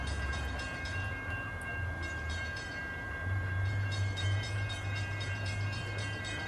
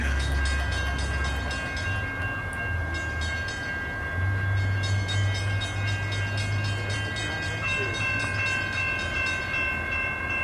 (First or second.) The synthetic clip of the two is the first